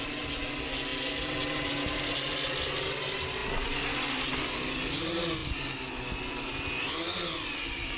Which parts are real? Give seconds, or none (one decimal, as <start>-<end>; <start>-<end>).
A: 0.0-8.0